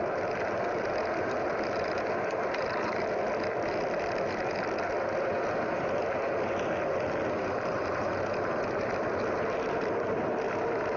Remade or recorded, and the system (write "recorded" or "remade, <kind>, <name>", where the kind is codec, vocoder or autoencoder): recorded